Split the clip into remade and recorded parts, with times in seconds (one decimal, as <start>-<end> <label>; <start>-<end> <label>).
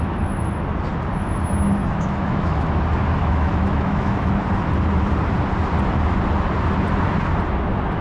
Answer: 0.0-1.8 recorded; 1.8-2.7 remade; 2.7-3.2 recorded; 3.2-4.4 remade; 4.4-8.0 recorded